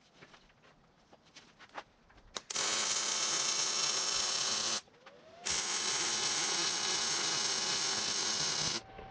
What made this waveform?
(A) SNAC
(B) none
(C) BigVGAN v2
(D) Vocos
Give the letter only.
B